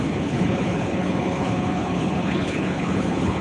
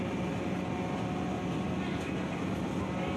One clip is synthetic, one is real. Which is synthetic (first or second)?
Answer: first